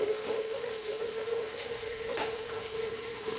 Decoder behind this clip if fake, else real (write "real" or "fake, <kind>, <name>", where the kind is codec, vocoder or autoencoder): fake, autoencoder, DAC-VAE